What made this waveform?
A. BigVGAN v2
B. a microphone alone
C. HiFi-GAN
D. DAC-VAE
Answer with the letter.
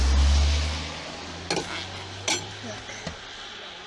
B